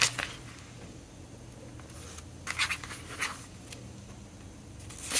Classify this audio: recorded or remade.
recorded